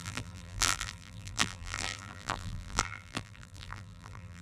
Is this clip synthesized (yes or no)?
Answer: yes